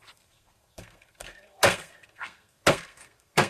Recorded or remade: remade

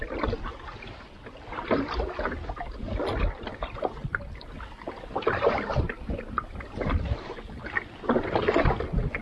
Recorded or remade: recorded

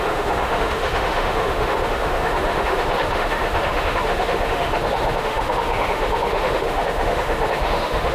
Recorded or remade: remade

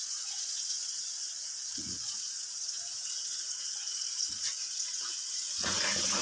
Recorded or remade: remade